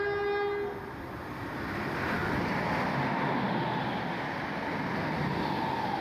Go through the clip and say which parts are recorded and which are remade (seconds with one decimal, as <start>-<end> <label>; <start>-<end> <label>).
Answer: 0.0-6.0 recorded